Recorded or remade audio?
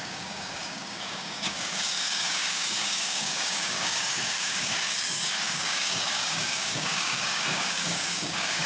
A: remade